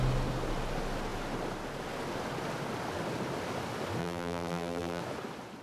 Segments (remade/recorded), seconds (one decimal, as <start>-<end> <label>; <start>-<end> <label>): 0.0-4.0 recorded; 4.0-5.0 remade; 5.0-5.6 recorded